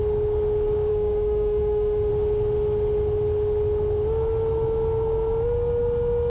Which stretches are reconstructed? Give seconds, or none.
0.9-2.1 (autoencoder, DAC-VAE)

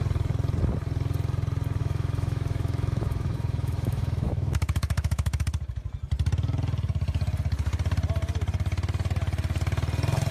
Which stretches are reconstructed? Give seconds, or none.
1.8-5.4 (autoencoder, DAC-VAE)

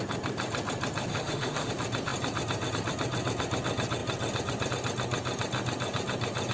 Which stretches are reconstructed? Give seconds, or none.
1.1-1.7 (autoencoder, DAC-VAE)

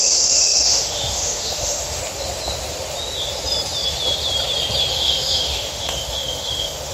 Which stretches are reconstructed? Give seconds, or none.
0.0-2.0 (autoencoder, DAC-VAE); 4.9-6.9

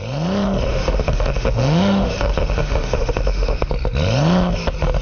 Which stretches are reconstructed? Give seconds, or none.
0.7-3.7 (autoencoder, DAC-VAE)

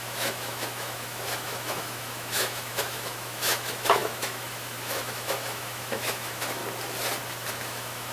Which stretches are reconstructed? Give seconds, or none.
0.0-6.6 (autoencoder, DAC-VAE); 7.5-8.1

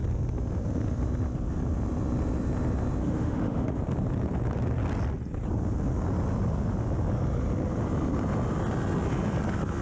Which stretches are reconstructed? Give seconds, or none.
3.0-3.8 (autoencoder, DAC-VAE)